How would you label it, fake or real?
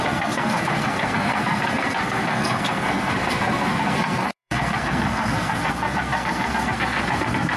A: fake